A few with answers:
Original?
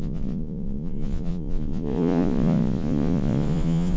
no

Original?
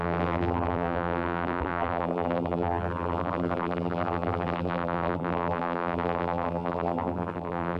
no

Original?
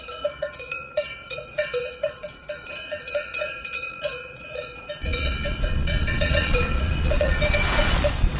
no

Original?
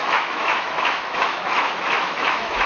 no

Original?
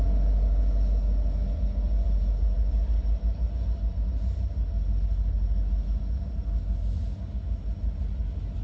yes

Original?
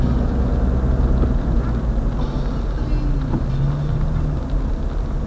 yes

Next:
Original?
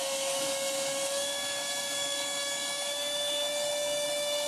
no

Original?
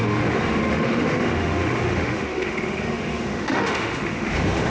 no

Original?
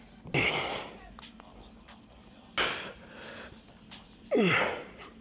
yes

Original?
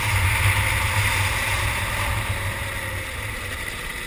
yes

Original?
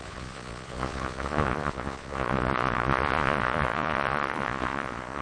no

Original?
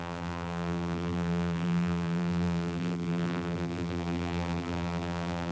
no